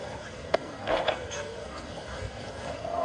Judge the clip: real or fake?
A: fake